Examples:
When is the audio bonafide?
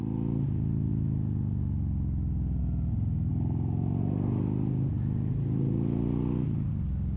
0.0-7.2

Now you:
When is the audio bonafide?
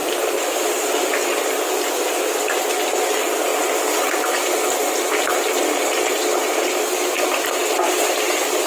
0.0-8.7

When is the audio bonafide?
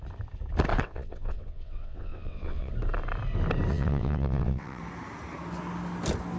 0.0-0.7; 2.7-3.7; 4.8-6.4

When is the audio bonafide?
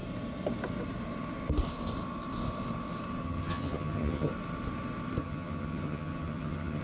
0.0-3.2; 4.3-5.2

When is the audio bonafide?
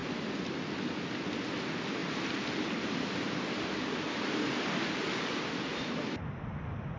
0.0-2.0; 6.2-7.0